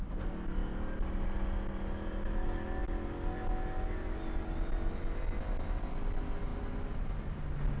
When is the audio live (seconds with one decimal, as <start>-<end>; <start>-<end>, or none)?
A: 0.0-7.8